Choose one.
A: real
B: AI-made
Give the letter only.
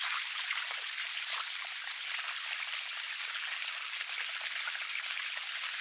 A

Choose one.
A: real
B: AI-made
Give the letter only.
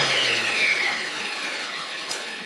B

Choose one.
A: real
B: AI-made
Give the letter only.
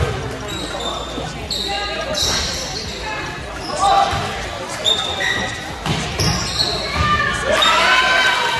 A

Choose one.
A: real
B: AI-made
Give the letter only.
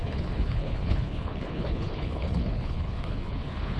B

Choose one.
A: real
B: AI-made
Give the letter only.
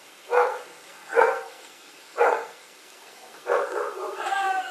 B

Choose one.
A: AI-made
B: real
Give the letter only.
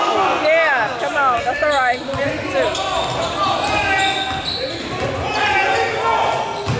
B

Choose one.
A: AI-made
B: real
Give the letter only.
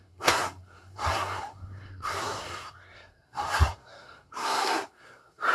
A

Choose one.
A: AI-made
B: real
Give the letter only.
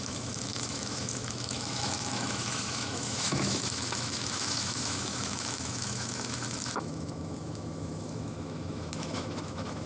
A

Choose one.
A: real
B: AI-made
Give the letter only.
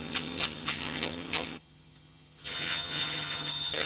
B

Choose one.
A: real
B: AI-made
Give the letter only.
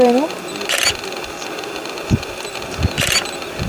A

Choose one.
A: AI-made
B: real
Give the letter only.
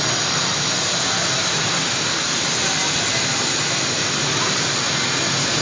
B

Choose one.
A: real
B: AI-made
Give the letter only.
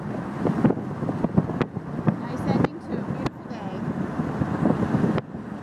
A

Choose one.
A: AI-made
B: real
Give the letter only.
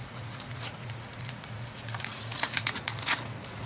A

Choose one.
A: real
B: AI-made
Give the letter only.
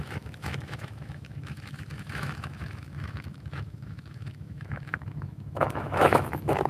B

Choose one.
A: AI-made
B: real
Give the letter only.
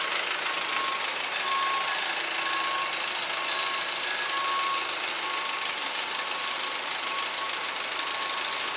B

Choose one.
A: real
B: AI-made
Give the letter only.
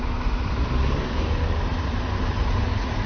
A